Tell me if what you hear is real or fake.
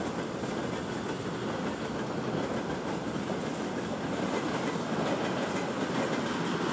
real